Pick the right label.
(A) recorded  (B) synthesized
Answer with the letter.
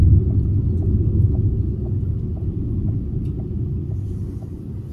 A